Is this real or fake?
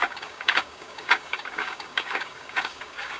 fake